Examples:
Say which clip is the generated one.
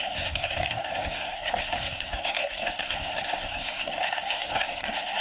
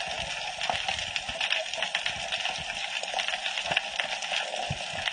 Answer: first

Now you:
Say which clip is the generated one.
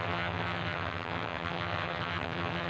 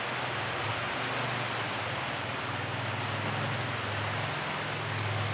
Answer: first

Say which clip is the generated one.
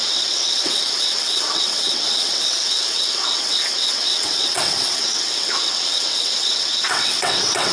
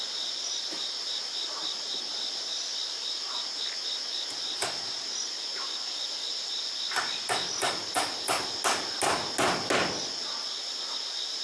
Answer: first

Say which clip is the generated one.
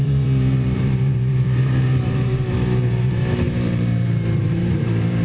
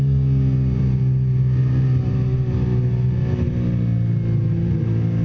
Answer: first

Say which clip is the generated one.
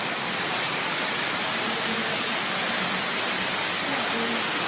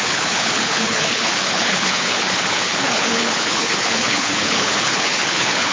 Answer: second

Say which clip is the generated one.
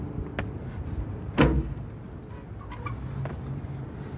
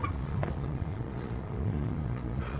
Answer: second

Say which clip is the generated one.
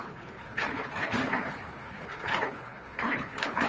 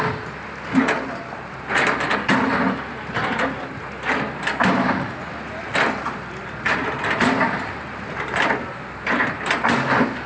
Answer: first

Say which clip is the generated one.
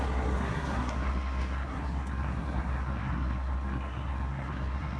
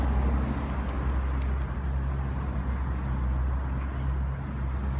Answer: first